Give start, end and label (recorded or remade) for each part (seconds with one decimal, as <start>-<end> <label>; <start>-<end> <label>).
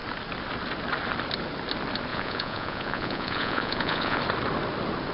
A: 0.0-2.1 recorded; 2.1-4.2 remade; 4.2-5.1 recorded